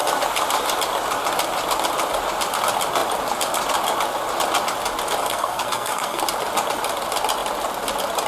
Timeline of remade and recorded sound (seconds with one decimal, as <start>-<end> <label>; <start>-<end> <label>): 0.0-5.2 recorded; 5.2-6.2 remade; 6.2-8.3 recorded